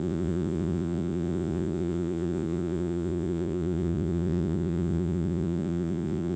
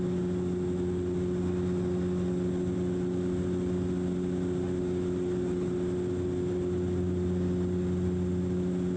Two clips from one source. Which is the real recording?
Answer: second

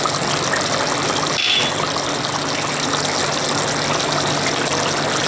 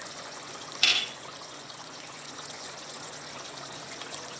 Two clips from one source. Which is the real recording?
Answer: first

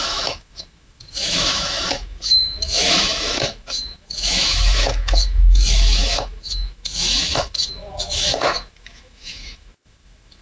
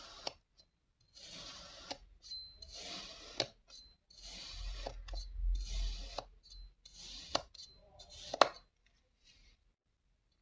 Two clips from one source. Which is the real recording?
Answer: second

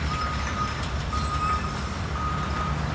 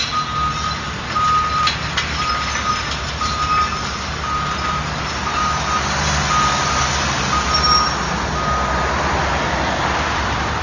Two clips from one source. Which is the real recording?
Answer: second